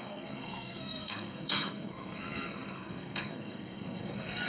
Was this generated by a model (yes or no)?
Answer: yes